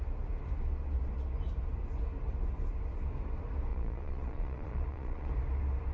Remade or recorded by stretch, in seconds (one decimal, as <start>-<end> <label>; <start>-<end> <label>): 0.0-3.7 recorded; 3.7-5.3 remade; 5.3-5.9 recorded